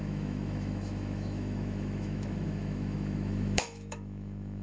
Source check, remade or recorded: remade